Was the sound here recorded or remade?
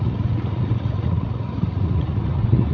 remade